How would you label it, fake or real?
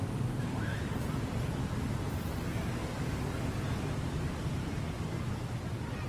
real